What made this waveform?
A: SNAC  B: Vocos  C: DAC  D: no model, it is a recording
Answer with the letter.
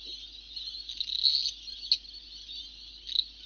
D